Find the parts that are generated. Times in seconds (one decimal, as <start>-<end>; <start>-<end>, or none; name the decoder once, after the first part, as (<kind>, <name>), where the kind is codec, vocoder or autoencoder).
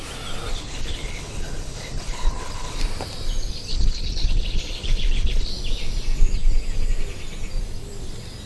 0.5-2.8 (codec, HILCodec); 3.7-5.5